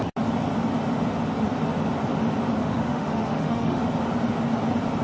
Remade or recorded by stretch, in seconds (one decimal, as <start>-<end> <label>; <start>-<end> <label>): 0.0-2.6 recorded; 2.6-3.8 remade; 3.8-5.0 recorded

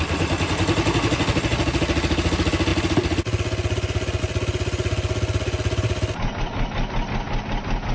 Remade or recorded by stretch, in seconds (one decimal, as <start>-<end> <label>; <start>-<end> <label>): 0.0-7.9 recorded

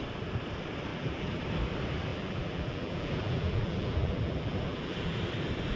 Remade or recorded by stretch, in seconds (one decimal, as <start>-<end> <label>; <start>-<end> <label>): 0.0-0.9 recorded; 0.9-1.4 remade; 1.4-2.1 recorded; 2.1-5.2 remade; 5.2-5.8 recorded

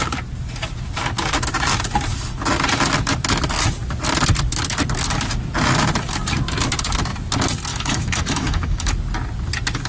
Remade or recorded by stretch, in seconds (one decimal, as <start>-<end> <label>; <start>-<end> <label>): 0.0-7.7 recorded; 7.7-8.9 remade; 8.9-9.9 recorded

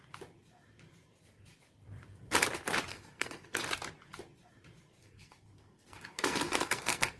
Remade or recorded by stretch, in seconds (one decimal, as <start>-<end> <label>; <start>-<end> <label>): 0.0-2.9 recorded; 2.9-3.6 remade; 3.6-5.0 recorded; 5.0-7.2 remade